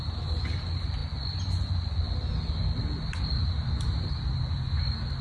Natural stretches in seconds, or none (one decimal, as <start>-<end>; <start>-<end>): 0.0-5.2